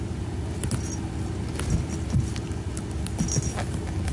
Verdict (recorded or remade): recorded